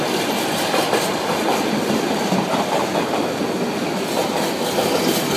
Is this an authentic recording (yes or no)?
yes